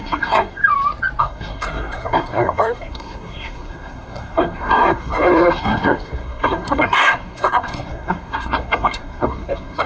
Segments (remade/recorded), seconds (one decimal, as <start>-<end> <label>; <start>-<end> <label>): 0.0-0.6 remade; 0.6-1.2 recorded; 1.2-9.9 remade